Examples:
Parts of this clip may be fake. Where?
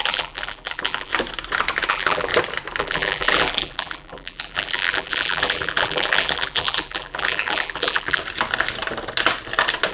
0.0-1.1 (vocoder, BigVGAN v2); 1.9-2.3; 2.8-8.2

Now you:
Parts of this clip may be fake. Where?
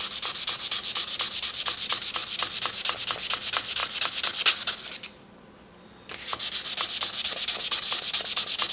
2.2-3.0 (vocoder, BigVGAN v2)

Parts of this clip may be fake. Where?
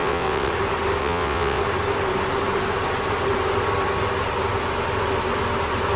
0.0-0.5 (vocoder, WaveNeXt); 1.0-1.6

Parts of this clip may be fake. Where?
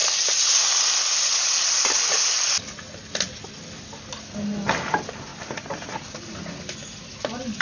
none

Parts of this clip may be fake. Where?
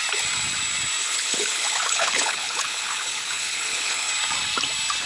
1.0-4.1 (codec, HILCodec)